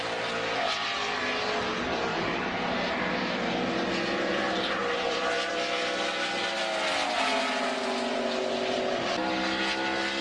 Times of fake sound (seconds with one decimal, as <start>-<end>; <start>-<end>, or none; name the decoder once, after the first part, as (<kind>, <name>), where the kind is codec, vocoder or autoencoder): 2.1-3.0 (vocoder, BigVGAN v2); 4.8-5.5